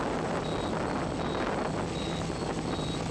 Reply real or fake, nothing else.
real